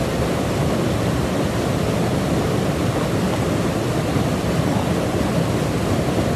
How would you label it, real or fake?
real